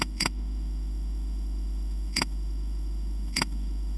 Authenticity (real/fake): fake